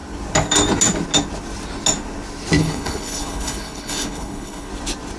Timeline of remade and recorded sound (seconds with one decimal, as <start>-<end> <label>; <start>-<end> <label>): 0.0-2.6 recorded; 2.6-4.7 remade; 4.7-5.2 recorded